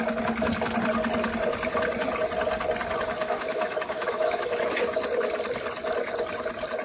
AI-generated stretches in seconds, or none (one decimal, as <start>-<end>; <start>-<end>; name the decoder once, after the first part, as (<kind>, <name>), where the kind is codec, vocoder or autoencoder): 3.2-4.6 (autoencoder, DAC-VAE)